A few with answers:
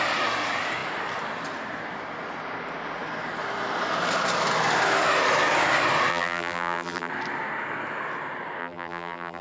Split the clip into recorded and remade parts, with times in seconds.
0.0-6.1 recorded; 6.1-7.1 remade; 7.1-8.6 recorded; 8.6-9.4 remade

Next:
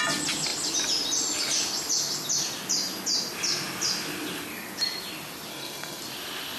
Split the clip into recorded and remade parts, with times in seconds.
0.0-5.5 recorded; 5.5-6.0 remade; 6.0-6.6 recorded

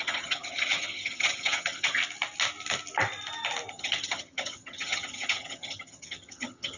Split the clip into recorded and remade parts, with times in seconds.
0.0-2.0 remade; 2.0-3.7 recorded; 3.7-6.8 remade

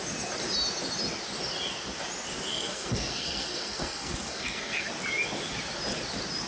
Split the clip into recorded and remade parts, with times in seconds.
0.0-2.5 recorded; 2.5-4.9 remade; 4.9-6.5 recorded

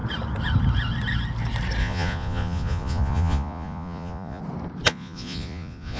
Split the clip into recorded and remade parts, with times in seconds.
0.0-1.8 recorded; 1.8-4.4 remade; 4.4-4.9 recorded; 4.9-6.0 remade